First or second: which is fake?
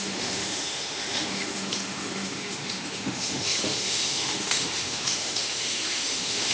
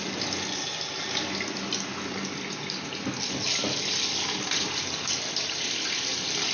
first